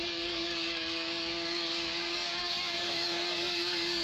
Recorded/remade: remade